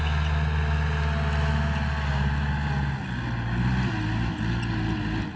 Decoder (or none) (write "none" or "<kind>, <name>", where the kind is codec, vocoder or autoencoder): none